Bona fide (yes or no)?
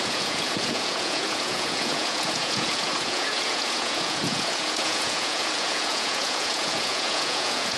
no